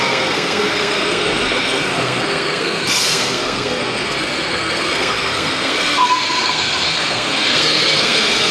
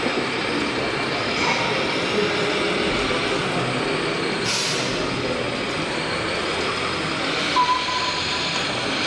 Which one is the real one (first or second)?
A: second